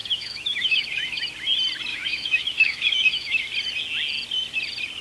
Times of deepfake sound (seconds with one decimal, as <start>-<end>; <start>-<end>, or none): 0.0-1.2; 1.9-3.4